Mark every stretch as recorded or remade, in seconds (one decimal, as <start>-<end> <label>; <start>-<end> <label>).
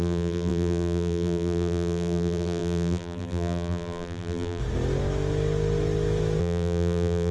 0.0-4.6 remade; 4.6-6.4 recorded; 6.4-7.3 remade